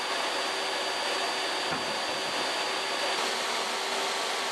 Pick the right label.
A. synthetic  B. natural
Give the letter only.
B